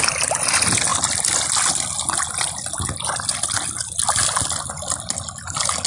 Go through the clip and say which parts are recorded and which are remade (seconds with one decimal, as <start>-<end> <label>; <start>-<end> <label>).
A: 0.0-5.9 recorded